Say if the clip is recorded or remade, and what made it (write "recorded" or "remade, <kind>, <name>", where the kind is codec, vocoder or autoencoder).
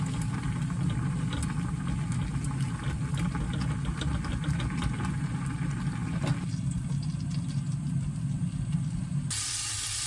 recorded